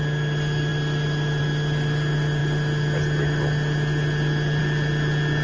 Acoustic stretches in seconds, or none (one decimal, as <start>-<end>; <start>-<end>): 0.0-5.4